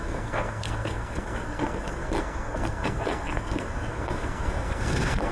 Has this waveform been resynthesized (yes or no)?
yes